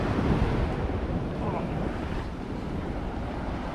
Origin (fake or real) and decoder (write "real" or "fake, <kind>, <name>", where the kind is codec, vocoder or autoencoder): fake, vocoder, BigVGAN v2